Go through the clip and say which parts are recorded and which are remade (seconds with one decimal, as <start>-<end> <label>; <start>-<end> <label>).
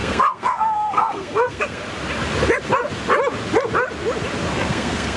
0.0-1.8 remade; 1.8-4.5 recorded; 4.5-5.2 remade